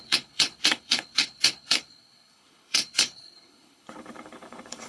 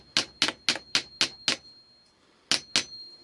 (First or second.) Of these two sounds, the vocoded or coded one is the first